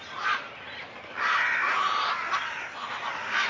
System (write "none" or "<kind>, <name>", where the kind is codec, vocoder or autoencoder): none